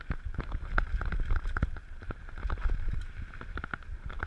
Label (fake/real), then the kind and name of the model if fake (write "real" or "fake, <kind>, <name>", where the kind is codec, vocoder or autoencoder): real